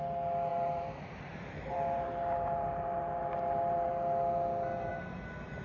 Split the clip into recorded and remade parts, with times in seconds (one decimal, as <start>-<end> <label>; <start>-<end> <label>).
0.0-0.5 recorded; 0.5-3.9 remade; 3.9-5.6 recorded